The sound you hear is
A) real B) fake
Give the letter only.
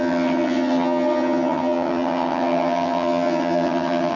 B